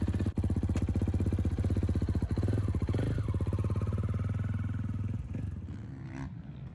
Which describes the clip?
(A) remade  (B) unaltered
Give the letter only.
B